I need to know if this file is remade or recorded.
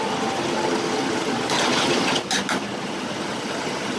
remade